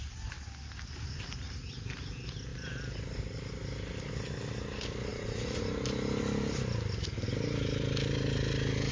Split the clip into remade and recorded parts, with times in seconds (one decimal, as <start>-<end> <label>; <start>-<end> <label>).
0.0-5.1 recorded; 5.1-5.6 remade; 5.6-8.9 recorded